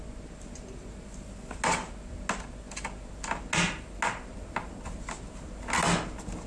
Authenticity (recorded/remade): recorded